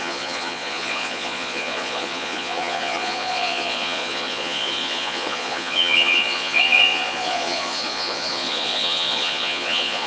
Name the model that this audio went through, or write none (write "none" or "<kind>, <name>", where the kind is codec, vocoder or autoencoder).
vocoder, Vocos